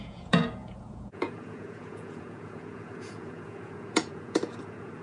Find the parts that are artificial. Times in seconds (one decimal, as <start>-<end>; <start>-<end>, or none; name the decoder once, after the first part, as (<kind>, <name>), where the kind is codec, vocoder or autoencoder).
0.0-5.0 (vocoder, Vocos)